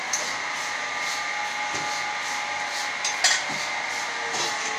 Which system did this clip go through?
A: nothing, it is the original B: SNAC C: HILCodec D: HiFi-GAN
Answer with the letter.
A